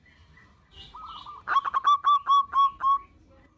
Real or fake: real